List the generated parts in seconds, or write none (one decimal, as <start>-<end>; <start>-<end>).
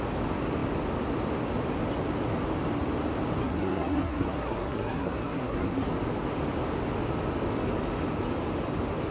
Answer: 3.4-5.9